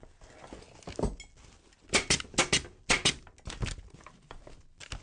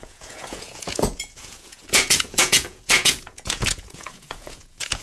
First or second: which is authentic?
first